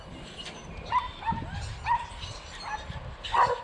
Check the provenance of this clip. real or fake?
real